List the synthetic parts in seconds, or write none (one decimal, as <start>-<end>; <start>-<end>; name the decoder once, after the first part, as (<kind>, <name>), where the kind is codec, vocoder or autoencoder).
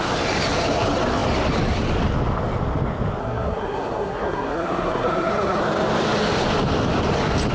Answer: 3.2-5.6 (codec, SNAC)